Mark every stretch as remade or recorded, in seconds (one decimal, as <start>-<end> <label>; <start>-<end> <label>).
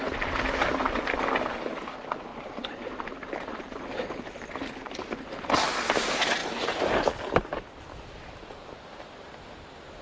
0.0-2.3 recorded; 2.3-5.0 remade; 5.0-6.4 recorded; 6.4-9.3 remade; 9.3-10.0 recorded